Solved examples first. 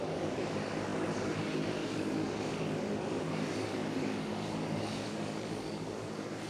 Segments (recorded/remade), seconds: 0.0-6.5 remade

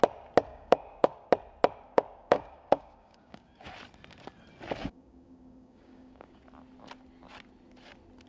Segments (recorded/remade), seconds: 0.0-0.5 recorded; 0.5-1.3 remade; 1.3-1.9 recorded; 1.9-3.7 remade; 3.7-4.8 recorded; 4.8-6.4 remade; 6.4-8.3 recorded

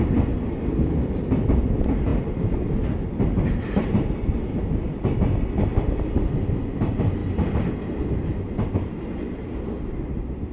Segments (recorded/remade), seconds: 0.0-10.5 recorded